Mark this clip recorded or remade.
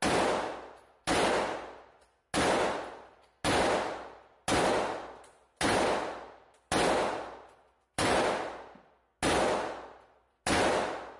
recorded